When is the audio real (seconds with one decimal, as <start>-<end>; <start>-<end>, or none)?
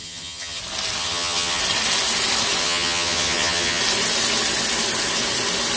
0.6-1.0; 1.6-2.6; 3.8-5.8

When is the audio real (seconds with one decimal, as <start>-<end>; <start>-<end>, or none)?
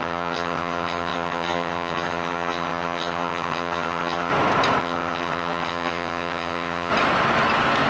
4.3-4.8; 6.9-7.9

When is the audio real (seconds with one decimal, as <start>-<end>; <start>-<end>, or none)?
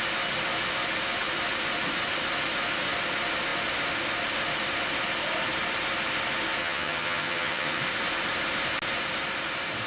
0.0-6.6; 7.8-9.9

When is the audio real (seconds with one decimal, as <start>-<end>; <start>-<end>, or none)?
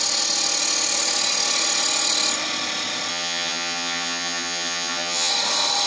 0.0-3.1; 5.3-5.9